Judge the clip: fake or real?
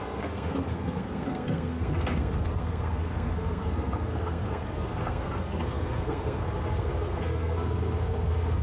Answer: fake